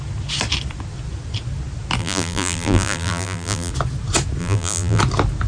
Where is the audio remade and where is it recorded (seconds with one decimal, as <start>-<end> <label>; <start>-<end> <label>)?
0.0-2.0 recorded; 2.0-3.7 remade; 3.7-4.4 recorded; 4.4-5.0 remade; 5.0-5.5 recorded